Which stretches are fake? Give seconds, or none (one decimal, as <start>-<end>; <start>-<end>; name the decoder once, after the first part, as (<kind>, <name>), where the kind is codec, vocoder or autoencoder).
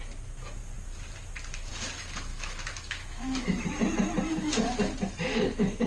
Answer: 2.3-3.8 (autoencoder, DAC-VAE)